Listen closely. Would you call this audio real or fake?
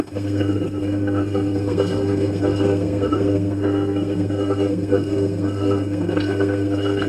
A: fake